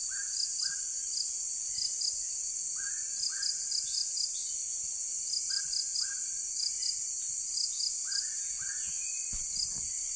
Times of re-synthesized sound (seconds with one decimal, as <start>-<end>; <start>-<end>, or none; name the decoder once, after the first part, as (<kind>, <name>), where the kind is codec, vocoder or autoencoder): none